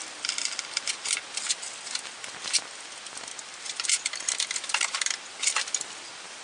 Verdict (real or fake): real